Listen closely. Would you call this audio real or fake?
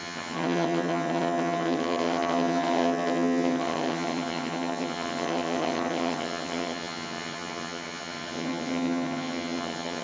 fake